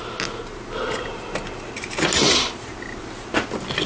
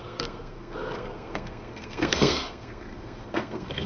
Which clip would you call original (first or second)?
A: first